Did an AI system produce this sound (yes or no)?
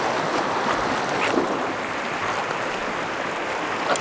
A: no